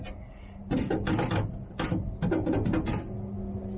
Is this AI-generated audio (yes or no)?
no